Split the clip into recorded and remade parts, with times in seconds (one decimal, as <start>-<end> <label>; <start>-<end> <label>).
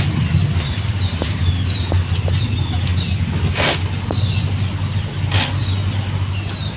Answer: 0.0-6.8 recorded